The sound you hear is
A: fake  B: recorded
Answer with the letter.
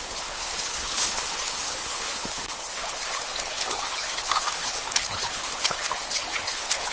A